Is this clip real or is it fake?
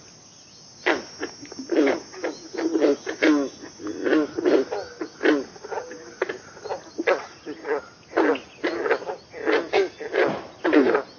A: real